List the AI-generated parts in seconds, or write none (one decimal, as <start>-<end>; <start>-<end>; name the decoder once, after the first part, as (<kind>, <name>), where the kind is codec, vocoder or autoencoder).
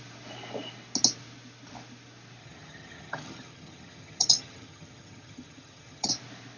2.4-6.1 (vocoder, HiFi-GAN)